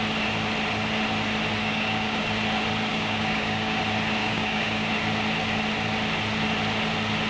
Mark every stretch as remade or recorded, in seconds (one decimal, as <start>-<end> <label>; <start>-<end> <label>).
0.0-1.6 recorded; 1.6-2.2 remade; 2.2-2.9 recorded; 2.9-3.8 remade; 3.8-4.2 recorded; 4.2-4.9 remade; 4.9-7.3 recorded